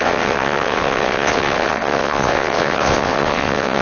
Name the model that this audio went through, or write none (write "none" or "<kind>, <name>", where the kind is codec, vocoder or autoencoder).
vocoder, WaveNeXt